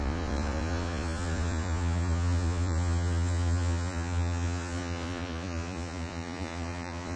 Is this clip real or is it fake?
fake